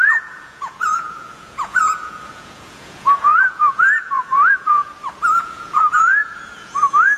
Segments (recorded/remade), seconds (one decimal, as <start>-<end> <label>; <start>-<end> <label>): 0.0-4.9 remade; 4.9-5.4 recorded; 5.4-7.2 remade